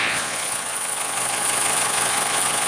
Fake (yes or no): yes